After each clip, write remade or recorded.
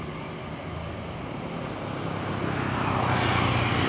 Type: recorded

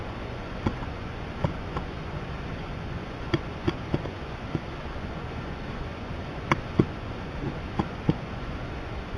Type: remade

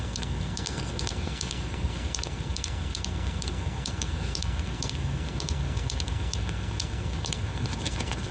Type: remade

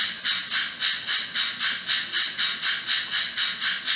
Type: recorded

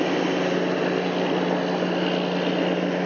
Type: recorded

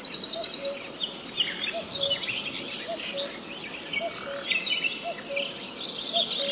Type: recorded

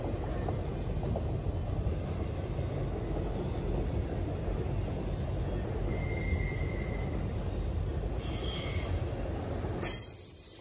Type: recorded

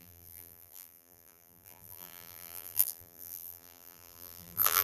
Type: remade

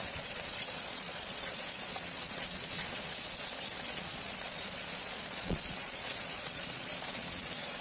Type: remade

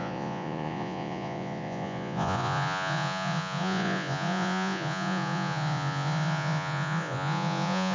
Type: remade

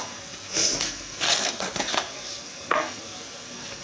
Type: remade